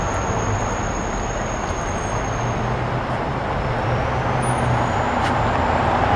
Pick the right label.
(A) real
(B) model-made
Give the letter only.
A